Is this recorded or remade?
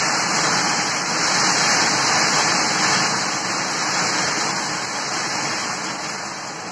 recorded